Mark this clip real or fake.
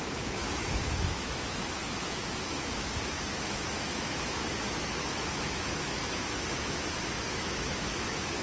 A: fake